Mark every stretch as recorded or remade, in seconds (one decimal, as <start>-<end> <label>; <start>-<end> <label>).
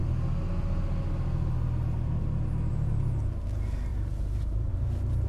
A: 0.0-3.9 recorded; 3.9-4.7 remade; 4.7-5.3 recorded